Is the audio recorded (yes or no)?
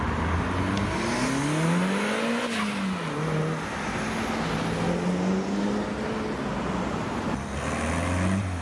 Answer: yes